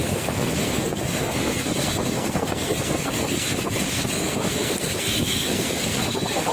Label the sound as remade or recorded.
remade